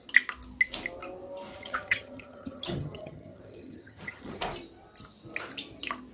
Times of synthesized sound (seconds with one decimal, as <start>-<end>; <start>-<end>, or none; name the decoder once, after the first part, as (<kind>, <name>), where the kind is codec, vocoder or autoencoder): 1.5-4.4 (vocoder, HiFi-GAN)